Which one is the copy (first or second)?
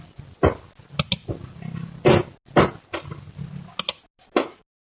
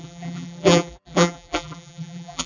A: second